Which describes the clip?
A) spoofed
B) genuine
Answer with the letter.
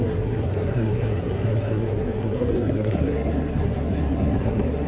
A